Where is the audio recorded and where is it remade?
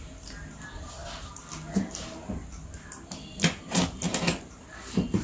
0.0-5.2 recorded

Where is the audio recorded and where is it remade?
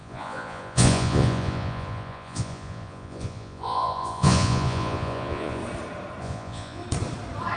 0.0-5.6 remade; 5.6-6.2 recorded; 6.2-6.8 remade; 6.8-7.6 recorded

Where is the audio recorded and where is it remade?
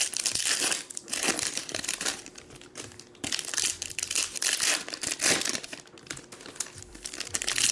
0.0-4.2 remade; 4.2-6.1 recorded; 6.1-7.7 remade